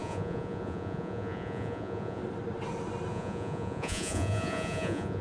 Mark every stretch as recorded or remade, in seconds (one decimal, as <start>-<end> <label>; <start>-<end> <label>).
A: 0.0-2.2 remade; 2.2-3.1 recorded; 3.1-5.2 remade